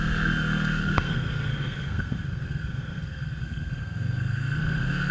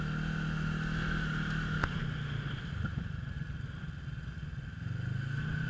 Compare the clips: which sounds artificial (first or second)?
first